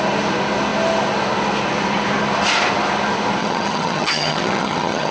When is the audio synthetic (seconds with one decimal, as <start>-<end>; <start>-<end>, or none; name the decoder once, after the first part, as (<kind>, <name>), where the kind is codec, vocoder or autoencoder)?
3.4-5.1 (vocoder, HiFi-GAN)